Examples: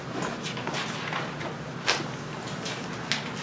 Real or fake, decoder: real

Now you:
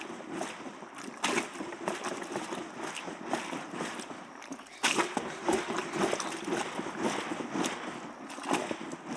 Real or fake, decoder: real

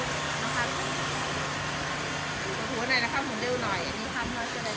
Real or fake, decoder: real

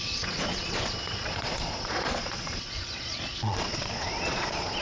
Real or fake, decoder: fake, vocoder, Vocos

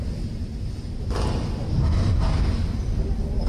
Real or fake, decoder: real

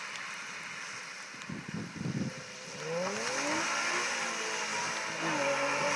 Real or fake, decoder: real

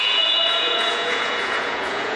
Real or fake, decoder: fake, vocoder, Vocos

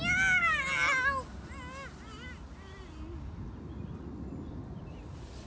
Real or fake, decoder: real